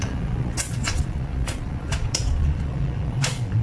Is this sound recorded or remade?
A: remade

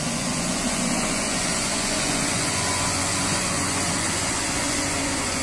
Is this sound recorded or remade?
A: remade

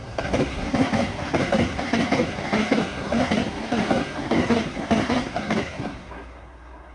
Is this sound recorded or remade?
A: remade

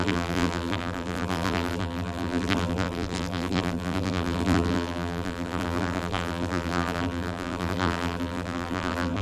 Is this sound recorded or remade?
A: remade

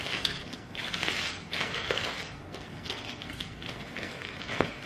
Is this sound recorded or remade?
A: remade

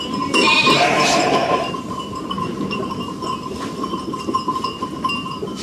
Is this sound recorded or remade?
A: remade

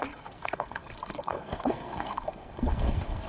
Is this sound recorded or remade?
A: remade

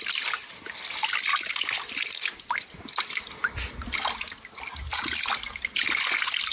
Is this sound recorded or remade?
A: recorded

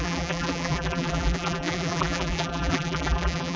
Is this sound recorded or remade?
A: remade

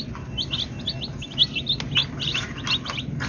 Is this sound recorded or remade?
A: recorded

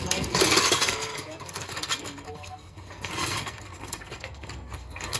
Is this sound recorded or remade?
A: remade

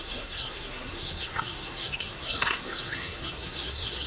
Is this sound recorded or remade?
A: remade